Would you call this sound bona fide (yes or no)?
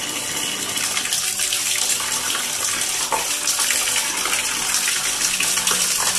yes